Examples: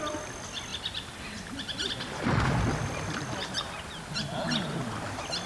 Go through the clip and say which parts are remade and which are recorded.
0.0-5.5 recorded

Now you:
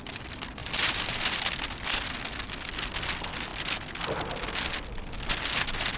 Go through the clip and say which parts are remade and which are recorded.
0.0-6.0 recorded

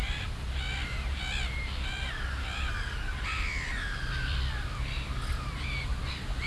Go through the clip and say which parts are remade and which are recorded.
0.0-6.5 recorded

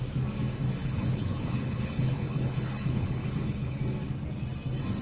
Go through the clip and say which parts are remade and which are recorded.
0.0-0.8 recorded; 0.8-3.8 remade; 3.8-5.0 recorded